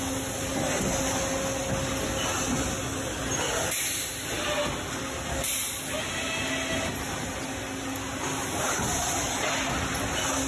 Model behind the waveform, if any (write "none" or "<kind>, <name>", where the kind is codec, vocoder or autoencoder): none